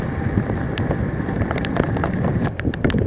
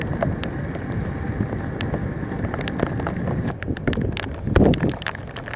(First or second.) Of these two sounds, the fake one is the first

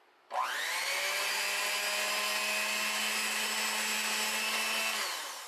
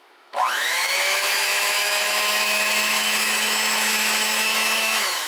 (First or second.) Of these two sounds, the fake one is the second